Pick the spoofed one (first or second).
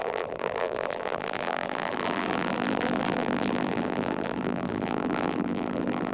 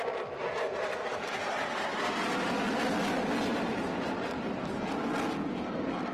first